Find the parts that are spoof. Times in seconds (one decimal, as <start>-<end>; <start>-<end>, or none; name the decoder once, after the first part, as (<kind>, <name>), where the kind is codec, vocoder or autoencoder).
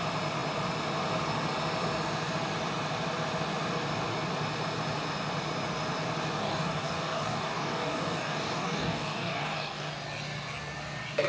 6.4-9.9 (codec, DAC)